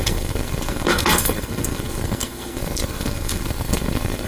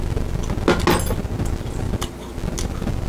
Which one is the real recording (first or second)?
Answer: second